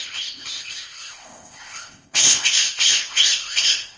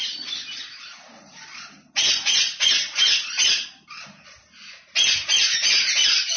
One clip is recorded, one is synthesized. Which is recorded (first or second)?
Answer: second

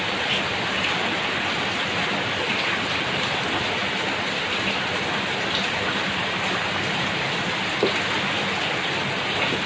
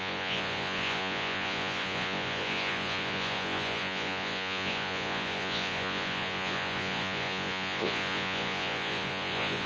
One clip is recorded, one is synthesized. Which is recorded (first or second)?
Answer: first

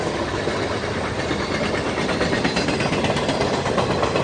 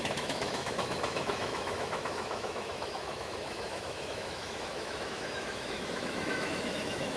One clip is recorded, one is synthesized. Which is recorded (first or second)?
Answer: first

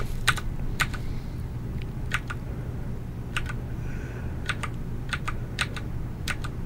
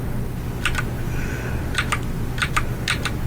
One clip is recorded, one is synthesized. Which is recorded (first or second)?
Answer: second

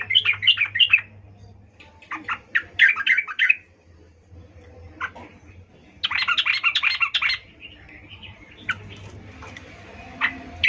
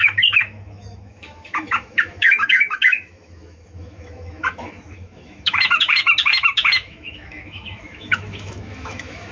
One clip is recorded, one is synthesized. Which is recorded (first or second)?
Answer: first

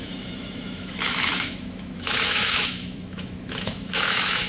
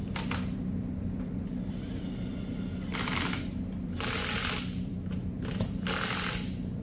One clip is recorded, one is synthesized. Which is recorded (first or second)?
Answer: second